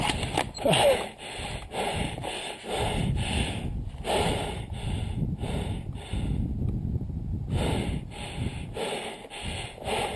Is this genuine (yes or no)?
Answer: yes